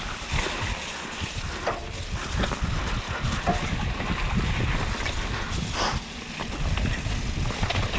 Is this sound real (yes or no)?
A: yes